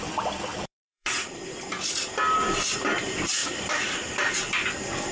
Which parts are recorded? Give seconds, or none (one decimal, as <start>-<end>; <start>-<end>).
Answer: 0.0-0.5; 1.7-3.4; 4.4-5.1